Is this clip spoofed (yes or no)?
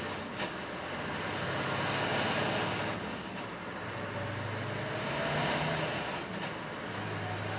no